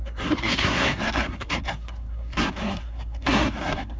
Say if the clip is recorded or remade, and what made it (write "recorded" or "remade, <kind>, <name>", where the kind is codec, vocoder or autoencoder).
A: remade, codec, SNAC